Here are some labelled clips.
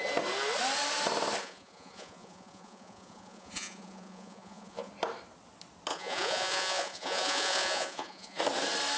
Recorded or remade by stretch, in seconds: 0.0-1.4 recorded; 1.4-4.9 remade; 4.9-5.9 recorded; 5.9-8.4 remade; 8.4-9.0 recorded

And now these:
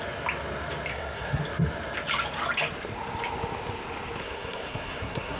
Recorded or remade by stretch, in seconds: 0.0-0.9 recorded; 0.9-1.4 remade; 1.4-4.2 recorded; 4.2-5.4 remade

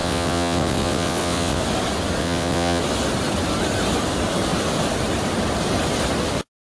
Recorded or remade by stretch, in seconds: 0.0-1.6 remade; 1.6-2.2 recorded; 2.2-2.8 remade; 2.8-6.7 recorded

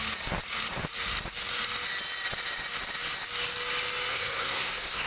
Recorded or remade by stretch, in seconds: 0.0-4.1 recorded; 4.1-5.1 remade